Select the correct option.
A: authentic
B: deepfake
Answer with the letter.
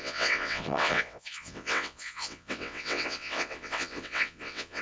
B